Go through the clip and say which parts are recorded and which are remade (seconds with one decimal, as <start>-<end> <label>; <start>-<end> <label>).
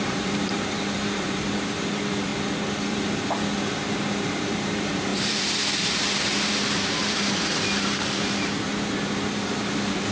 0.0-2.3 remade; 2.3-2.9 recorded; 2.9-10.1 remade